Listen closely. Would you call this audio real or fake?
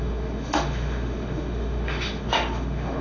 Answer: fake